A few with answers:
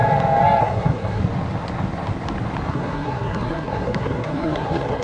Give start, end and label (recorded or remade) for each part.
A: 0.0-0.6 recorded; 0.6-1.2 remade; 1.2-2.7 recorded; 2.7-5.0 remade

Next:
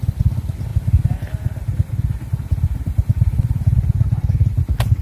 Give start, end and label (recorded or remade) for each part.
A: 0.0-5.0 recorded

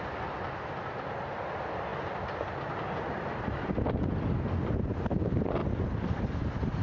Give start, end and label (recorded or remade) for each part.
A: 0.0-6.8 recorded

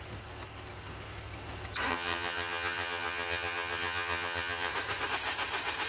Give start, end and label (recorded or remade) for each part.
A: 0.0-1.9 recorded; 1.9-4.7 remade; 4.7-5.9 recorded

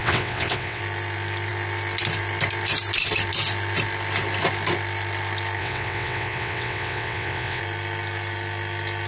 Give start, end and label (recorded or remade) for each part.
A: 0.0-0.8 remade; 0.8-5.6 recorded; 5.6-7.6 remade; 7.6-9.1 recorded

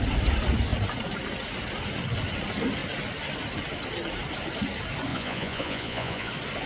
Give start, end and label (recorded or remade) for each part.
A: 0.0-5.1 recorded; 5.1-6.3 remade; 6.3-6.7 recorded

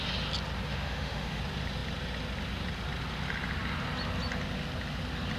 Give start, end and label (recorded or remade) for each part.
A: 0.0-0.7 recorded; 0.7-1.4 remade; 1.4-5.4 recorded